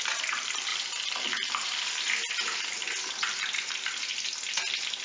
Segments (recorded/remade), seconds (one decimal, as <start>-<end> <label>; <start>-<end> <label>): 0.0-5.0 recorded